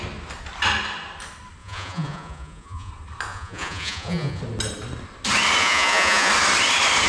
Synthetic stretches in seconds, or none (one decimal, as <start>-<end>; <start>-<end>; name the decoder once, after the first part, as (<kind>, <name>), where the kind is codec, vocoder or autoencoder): 1.6-2.9 (vocoder, Vocos); 3.3-4.4; 5.6-6.3